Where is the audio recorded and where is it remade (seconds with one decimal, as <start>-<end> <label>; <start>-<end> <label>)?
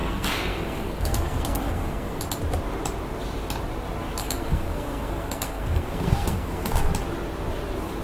0.0-2.2 remade; 2.2-4.2 recorded; 4.2-6.9 remade; 6.9-8.0 recorded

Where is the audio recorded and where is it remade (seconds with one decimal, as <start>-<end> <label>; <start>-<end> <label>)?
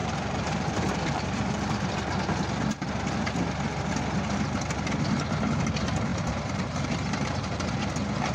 0.0-1.9 remade; 1.9-6.1 recorded; 6.1-7.7 remade; 7.7-8.3 recorded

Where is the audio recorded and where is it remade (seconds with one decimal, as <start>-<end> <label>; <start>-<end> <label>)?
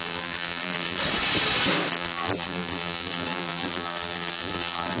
0.0-1.0 remade; 1.0-1.9 recorded; 1.9-5.0 remade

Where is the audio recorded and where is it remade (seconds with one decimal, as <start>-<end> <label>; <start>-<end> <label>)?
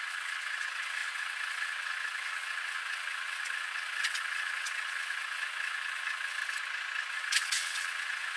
0.0-6.4 remade; 6.4-7.1 recorded; 7.1-8.4 remade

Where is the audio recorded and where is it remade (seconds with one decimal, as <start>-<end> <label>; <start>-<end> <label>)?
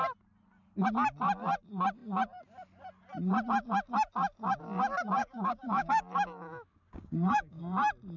0.0-5.2 recorded; 5.2-6.0 remade; 6.0-6.9 recorded; 6.9-7.6 remade; 7.6-8.2 recorded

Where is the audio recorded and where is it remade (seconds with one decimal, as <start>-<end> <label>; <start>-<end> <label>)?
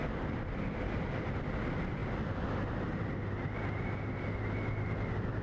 0.0-5.4 recorded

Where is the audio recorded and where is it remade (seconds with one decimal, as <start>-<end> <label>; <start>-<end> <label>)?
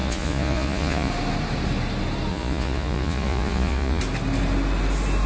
0.0-1.1 remade; 1.1-2.3 recorded; 2.3-4.0 remade; 4.0-5.3 recorded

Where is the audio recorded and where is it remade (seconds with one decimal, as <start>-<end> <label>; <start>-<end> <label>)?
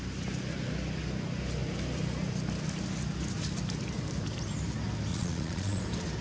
0.0-5.1 recorded; 5.1-5.8 remade; 5.8-6.2 recorded